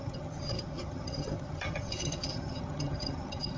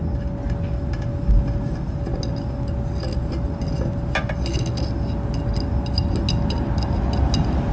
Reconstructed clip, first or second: first